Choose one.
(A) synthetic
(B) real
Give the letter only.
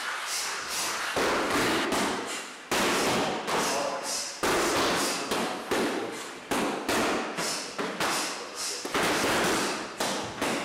B